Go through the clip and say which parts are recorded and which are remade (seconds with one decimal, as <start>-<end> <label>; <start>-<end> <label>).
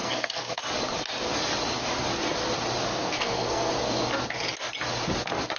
0.0-0.6 remade; 0.6-2.9 recorded; 2.9-3.7 remade; 3.7-5.6 recorded